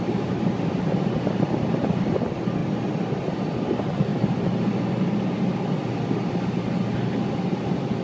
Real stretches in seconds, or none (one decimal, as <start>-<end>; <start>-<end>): 0.0-8.0

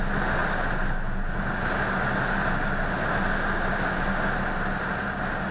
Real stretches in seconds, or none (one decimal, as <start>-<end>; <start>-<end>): 0.0-5.5